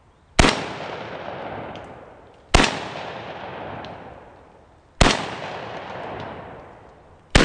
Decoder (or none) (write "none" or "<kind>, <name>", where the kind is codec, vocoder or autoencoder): none